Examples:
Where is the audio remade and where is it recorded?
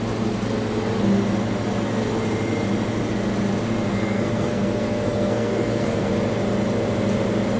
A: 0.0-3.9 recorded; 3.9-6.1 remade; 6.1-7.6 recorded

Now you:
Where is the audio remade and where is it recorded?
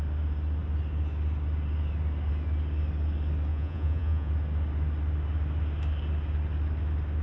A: 0.0-3.5 recorded; 3.5-4.3 remade; 4.3-7.2 recorded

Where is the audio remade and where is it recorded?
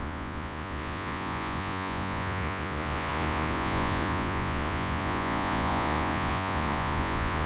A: 0.0-7.5 remade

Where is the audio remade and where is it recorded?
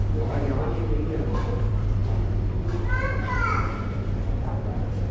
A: 0.0-5.1 remade